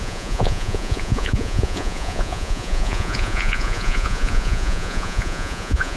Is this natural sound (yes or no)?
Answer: no